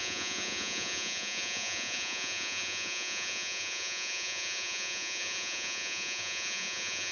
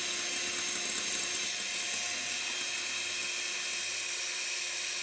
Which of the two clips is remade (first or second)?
first